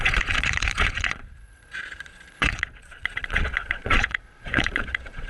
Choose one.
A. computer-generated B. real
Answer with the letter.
A